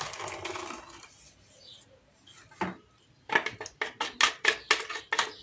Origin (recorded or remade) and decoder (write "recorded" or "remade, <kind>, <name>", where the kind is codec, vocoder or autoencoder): recorded